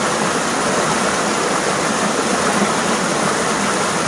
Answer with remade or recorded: recorded